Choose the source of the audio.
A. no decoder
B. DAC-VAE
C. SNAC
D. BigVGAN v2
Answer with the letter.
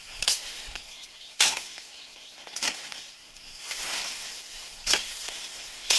C